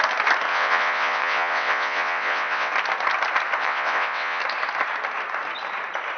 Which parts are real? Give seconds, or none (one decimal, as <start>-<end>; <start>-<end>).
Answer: 0.0-0.5; 2.7-3.6; 4.4-6.2